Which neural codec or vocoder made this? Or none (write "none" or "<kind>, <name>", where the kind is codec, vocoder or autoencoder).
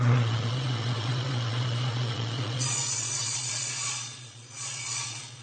vocoder, Vocos